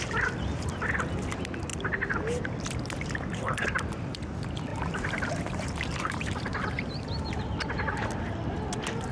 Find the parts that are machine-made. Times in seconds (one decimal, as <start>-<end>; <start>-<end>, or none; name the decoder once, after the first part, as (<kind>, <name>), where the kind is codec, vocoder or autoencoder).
1.7-4.2 (vocoder, BigVGAN v2); 4.7-7.4